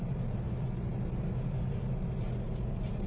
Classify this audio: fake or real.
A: real